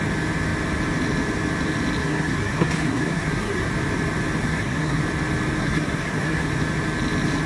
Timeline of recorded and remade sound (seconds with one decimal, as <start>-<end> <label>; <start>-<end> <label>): 0.0-2.0 recorded; 2.0-3.7 remade; 3.7-4.4 recorded; 4.4-5.0 remade; 5.0-5.6 recorded; 5.6-6.5 remade; 6.5-7.5 recorded